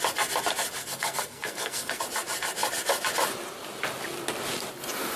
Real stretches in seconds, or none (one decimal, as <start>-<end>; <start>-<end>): 0.0-0.8; 2.0-5.2